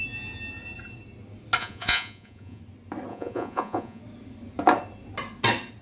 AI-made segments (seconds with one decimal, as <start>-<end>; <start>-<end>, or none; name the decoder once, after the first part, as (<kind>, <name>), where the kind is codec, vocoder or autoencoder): 1.6-2.6 (vocoder, Vocos); 3.1-4.0